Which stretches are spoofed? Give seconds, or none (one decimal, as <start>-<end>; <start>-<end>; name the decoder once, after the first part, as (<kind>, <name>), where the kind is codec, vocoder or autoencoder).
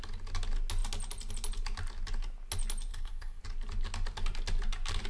2.9-3.4 (codec, SNAC)